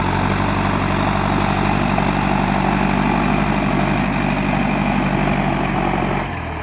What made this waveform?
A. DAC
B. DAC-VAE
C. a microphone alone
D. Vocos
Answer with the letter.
C